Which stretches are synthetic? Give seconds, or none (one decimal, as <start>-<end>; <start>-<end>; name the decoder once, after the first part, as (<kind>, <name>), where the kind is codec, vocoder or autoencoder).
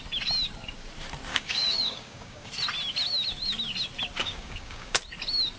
1.3-2.5 (codec, DAC); 4.2-5.0